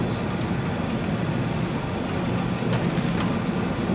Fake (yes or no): no